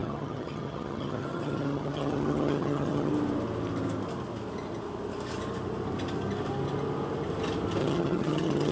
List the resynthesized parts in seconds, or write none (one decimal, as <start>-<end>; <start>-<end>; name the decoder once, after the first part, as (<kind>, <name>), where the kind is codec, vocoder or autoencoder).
0.0-3.1 (vocoder, HiFi-GAN); 7.8-8.7